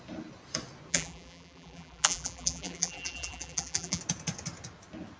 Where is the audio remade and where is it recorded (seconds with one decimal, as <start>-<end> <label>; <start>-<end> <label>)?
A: 0.0-0.9 recorded; 0.9-4.0 remade; 4.0-5.2 recorded